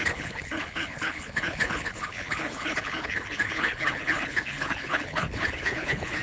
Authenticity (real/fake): fake